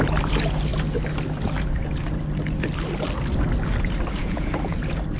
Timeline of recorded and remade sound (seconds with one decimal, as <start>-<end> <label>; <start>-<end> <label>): 0.0-4.2 recorded; 4.2-4.8 remade; 4.8-5.2 recorded